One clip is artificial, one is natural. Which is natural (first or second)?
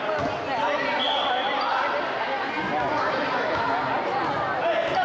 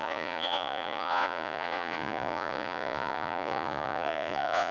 first